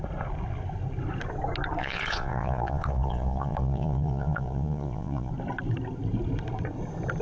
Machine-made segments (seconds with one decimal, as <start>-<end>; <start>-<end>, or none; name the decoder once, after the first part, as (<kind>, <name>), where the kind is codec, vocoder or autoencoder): 1.8-5.3 (vocoder, Vocos)